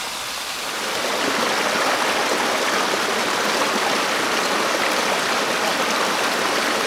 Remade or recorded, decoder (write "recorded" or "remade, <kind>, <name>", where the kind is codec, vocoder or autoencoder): recorded